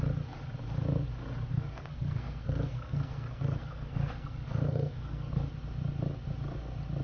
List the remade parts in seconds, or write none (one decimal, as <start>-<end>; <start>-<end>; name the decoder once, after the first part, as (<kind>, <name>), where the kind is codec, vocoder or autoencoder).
1.5-5.3 (codec, SNAC)